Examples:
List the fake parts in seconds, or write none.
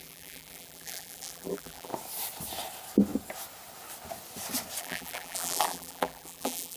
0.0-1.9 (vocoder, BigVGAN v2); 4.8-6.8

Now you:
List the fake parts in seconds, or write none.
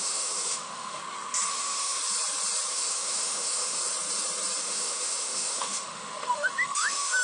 0.0-1.0 (autoencoder, DAC-VAE); 1.5-2.0; 2.7-3.8; 4.6-7.2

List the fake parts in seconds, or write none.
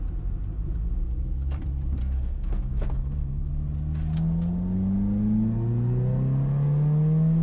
2.0-3.5 (codec, SNAC)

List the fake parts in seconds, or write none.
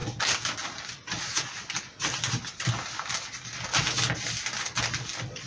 none